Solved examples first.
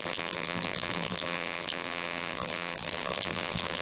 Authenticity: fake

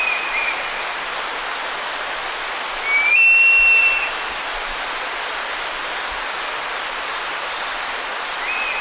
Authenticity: real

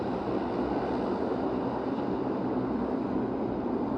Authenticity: real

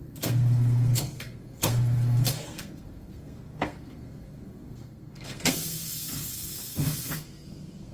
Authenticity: fake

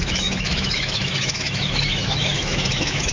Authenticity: fake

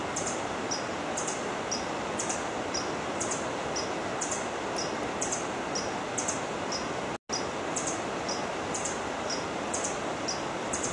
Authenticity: real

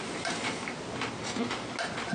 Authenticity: real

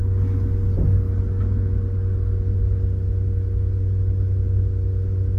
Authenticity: real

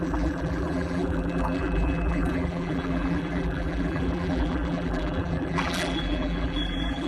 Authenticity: fake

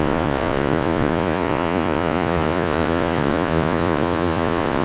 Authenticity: fake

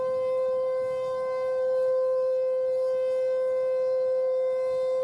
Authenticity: fake